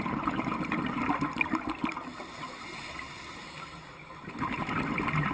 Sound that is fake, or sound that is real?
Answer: real